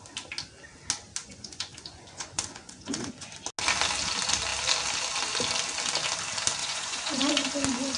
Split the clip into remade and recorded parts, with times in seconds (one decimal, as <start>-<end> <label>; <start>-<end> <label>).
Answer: 0.0-1.2 recorded; 1.2-3.3 remade; 3.3-6.6 recorded; 6.6-7.3 remade; 7.3-8.0 recorded